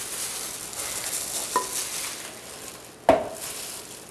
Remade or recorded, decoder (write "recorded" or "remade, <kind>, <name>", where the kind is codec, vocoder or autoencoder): recorded